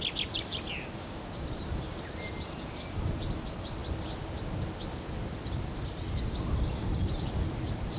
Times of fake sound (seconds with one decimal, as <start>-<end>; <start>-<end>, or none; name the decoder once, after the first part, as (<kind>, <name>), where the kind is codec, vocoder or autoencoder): none